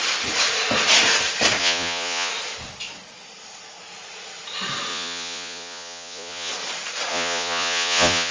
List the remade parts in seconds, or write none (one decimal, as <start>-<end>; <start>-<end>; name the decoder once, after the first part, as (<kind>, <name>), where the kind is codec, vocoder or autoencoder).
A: 1.6-2.3 (vocoder, Vocos); 4.9-6.5; 7.1-8.3